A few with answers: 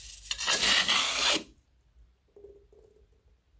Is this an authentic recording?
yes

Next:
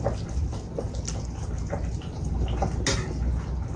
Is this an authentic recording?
yes